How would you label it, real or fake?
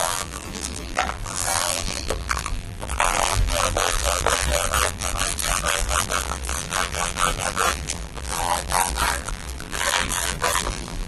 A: fake